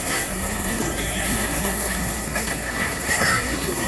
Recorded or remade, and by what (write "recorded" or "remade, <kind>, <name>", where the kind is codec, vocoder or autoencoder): remade, codec, SNAC